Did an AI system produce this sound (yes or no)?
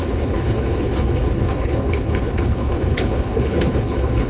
yes